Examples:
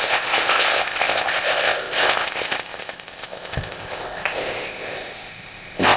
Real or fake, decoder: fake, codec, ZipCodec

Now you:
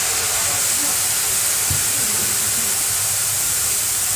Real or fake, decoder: real